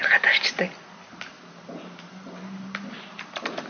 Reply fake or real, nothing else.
real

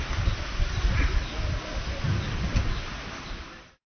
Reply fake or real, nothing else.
real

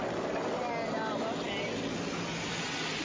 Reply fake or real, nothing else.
real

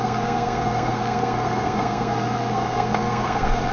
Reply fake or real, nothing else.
fake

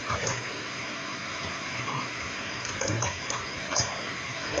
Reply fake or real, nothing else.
fake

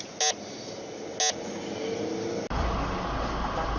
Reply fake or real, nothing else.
real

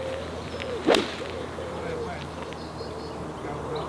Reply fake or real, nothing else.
real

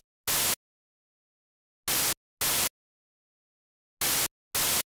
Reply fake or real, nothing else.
real